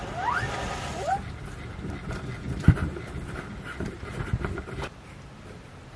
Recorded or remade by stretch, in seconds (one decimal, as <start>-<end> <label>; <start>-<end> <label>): 0.0-6.0 recorded